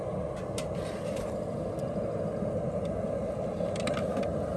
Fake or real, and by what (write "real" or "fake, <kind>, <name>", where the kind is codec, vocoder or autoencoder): real